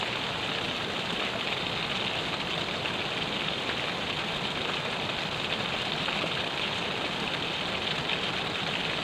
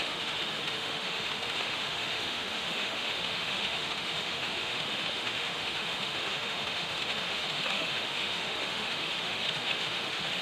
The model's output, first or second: second